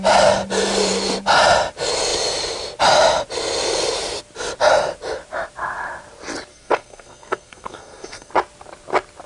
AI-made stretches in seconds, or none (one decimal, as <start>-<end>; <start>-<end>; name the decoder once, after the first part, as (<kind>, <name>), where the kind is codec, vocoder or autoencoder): 6.5-8.3 (codec, SNAC)